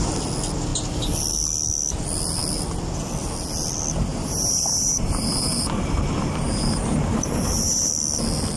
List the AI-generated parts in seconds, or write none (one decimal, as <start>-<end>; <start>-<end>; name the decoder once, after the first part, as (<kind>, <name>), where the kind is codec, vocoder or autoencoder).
4.1-7.9 (vocoder, BigVGAN v2)